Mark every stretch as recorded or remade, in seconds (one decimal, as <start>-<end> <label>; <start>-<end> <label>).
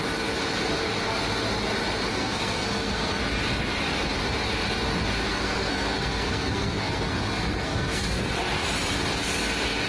0.0-2.1 recorded; 2.1-3.2 remade; 3.2-5.3 recorded; 5.3-8.2 remade; 8.2-9.9 recorded